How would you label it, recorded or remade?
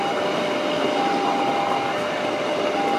recorded